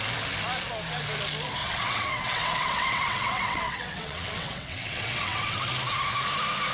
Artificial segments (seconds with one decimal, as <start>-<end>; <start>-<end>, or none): 1.6-5.6